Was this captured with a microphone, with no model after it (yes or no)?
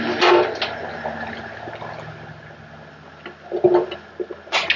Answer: yes